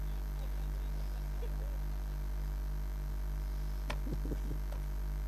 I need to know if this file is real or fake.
real